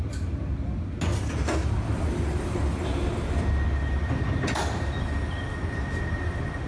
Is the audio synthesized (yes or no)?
no